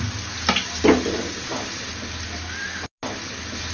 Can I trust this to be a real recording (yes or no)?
yes